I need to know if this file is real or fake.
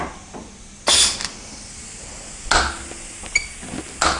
real